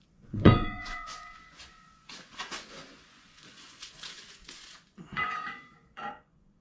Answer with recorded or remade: remade